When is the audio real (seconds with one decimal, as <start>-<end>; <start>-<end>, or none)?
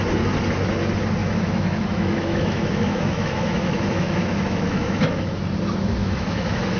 0.0-1.2; 5.3-6.0